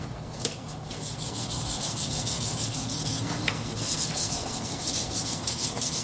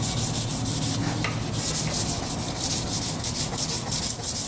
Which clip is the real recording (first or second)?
second